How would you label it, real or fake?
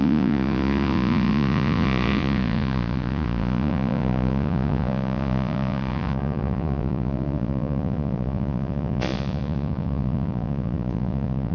fake